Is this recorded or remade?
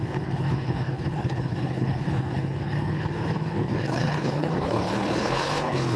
remade